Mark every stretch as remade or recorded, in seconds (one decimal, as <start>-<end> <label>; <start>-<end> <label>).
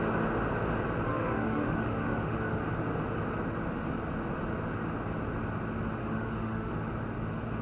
0.0-1.1 recorded; 1.1-2.6 remade; 2.6-6.0 recorded; 6.0-6.7 remade; 6.7-7.6 recorded